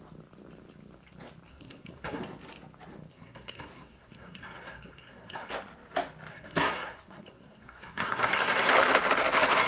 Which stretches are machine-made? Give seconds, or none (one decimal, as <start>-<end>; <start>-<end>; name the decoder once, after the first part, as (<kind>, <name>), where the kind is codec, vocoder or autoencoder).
1.5-2.2 (codec, SNAC); 3.1-5.5; 6.3-8.7